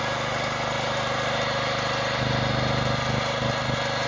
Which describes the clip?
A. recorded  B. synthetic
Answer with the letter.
A